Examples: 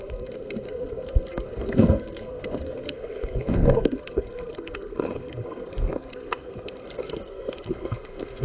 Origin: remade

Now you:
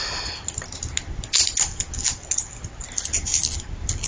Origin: recorded